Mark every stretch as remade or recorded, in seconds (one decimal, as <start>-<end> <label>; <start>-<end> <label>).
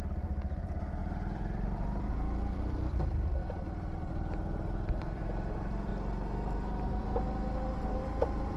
0.0-5.9 remade; 5.9-7.0 recorded; 7.0-8.6 remade